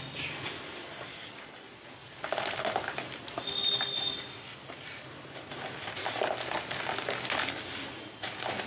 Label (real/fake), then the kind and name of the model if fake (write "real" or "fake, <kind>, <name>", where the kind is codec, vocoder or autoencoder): real